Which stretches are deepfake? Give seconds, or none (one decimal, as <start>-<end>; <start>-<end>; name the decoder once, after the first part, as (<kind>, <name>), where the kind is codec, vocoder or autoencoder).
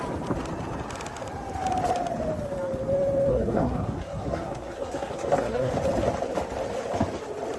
3.3-5.7 (codec, SNAC)